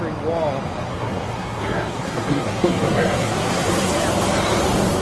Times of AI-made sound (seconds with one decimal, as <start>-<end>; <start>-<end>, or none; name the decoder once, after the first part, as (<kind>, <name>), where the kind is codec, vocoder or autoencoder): 0.9-3.9 (codec, SNAC)